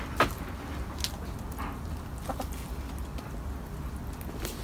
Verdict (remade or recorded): recorded